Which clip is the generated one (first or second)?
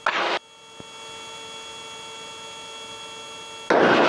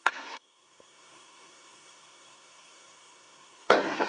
second